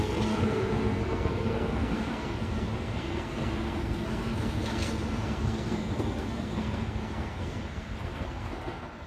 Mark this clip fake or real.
fake